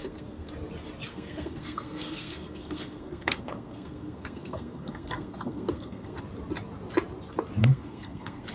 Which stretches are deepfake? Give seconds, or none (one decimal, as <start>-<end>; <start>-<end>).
0.0-0.5; 1.1-6.2; 7.6-8.5

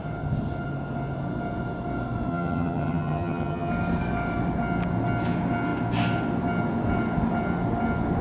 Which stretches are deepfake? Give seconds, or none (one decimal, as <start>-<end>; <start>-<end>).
2.3-3.7

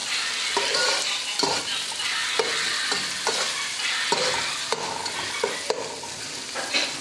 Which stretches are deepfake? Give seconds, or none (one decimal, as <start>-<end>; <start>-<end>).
none

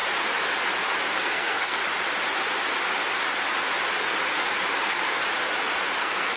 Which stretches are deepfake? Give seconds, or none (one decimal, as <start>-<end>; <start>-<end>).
1.2-1.8; 4.8-5.2; 6.0-6.4

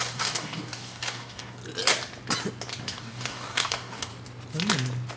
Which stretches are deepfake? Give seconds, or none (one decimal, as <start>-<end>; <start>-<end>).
0.0-1.6; 2.8-4.1

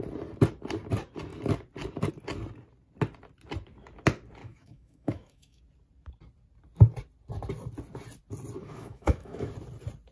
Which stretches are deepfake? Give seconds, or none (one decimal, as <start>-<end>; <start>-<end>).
4.4-5.6; 8.6-9.5

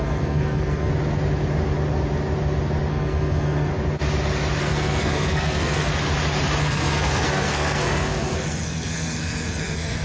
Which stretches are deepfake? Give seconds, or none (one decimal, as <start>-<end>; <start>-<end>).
0.0-0.9; 2.9-3.7; 4.6-5.9; 6.6-10.0